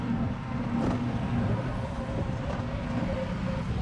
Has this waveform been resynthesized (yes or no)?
no